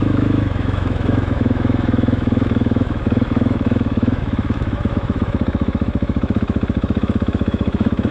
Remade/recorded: remade